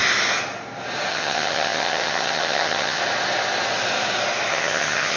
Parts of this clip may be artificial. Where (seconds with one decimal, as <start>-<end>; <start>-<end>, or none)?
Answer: 1.1-3.0; 4.5-5.2